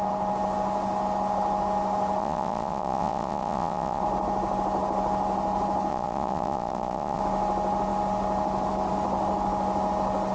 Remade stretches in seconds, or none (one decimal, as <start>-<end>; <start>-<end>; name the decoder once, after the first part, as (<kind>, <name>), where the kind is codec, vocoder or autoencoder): 2.2-4.0 (vocoder, Vocos); 5.9-7.2